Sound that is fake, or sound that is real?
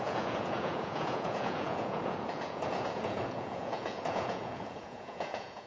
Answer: fake